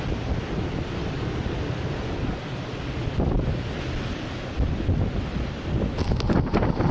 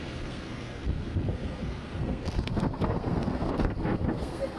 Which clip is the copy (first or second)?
second